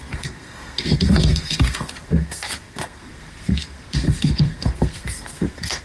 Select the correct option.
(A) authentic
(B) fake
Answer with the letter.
B